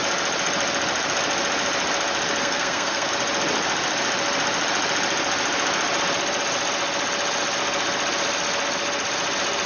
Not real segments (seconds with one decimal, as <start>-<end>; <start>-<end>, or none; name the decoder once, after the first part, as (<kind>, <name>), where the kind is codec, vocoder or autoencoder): 2.4-3.1 (codec, SNAC)